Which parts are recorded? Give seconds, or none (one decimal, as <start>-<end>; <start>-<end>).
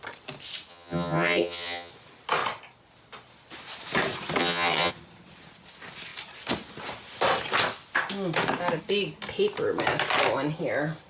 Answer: 0.0-0.7; 1.9-4.4; 4.9-11.1